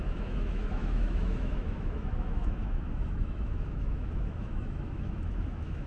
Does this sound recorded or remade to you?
remade